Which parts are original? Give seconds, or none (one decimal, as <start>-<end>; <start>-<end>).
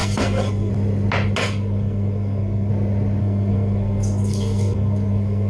0.7-1.4; 2.7-3.2